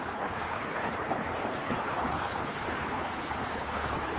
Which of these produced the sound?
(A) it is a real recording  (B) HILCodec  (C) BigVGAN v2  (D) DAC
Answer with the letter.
B